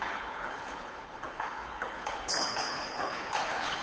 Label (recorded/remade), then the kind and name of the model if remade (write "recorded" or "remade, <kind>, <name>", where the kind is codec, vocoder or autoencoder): remade, codec, HILCodec